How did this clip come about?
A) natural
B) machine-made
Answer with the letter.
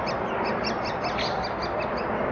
A